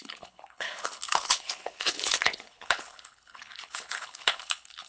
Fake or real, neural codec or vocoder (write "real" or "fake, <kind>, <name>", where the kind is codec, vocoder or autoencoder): fake, codec, HILCodec